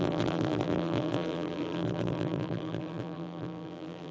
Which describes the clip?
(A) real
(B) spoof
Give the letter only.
B